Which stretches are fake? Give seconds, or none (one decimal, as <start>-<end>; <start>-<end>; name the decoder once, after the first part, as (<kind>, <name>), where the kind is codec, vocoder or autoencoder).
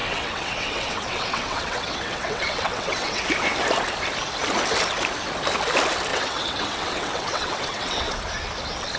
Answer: 0.0-3.2 (vocoder, WaveNeXt); 6.1-8.2